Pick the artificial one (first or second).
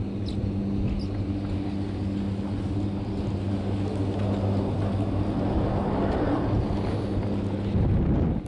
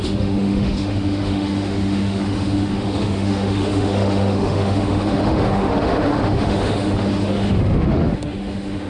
second